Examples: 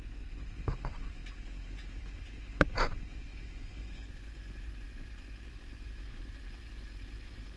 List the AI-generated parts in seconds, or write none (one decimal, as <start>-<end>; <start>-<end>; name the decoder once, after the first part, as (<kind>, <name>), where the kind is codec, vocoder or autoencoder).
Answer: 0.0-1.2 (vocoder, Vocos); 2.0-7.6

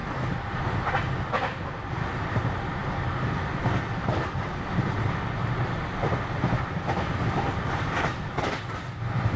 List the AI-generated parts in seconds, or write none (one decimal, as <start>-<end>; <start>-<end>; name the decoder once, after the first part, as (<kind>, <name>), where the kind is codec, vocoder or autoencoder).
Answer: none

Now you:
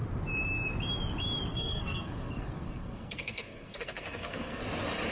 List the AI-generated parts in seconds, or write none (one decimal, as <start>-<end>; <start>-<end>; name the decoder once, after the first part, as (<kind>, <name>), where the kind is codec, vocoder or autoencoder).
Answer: 1.5-4.6 (codec, SNAC)

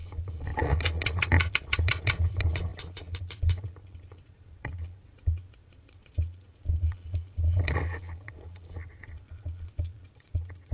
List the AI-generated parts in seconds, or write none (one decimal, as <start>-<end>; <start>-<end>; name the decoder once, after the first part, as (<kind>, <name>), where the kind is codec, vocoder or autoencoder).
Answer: 0.0-10.7 (vocoder, Vocos)

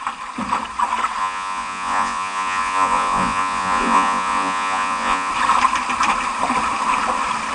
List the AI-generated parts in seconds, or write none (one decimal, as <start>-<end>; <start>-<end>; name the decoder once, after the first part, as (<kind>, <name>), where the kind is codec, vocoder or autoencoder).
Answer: 1.2-5.3 (vocoder, Vocos)